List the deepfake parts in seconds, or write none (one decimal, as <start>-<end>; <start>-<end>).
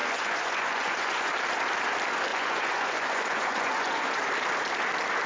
0.0-1.3; 2.3-4.2